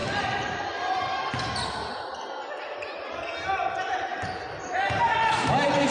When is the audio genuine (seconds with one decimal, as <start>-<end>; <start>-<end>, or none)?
0.0-5.9